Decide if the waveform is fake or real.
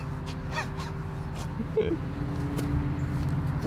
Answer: real